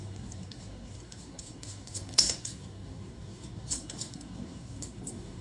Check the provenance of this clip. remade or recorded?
remade